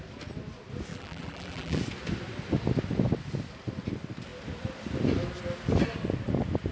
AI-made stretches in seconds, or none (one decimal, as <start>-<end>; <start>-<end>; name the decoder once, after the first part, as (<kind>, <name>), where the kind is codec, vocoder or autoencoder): 0.9-1.8 (vocoder, BigVGAN v2)